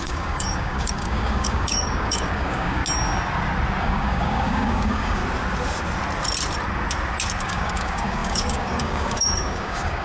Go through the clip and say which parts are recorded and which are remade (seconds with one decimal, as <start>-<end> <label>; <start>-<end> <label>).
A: 0.0-2.8 remade; 2.8-3.8 recorded; 3.8-5.2 remade; 5.2-7.4 recorded; 7.4-10.0 remade